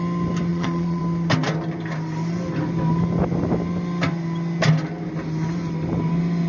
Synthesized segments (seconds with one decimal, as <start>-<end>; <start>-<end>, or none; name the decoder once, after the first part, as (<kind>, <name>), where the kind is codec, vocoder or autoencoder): 0.5-1.0 (vocoder, Vocos)